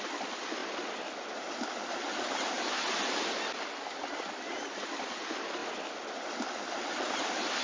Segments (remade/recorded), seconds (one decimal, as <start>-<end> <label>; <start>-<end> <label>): 0.0-7.6 recorded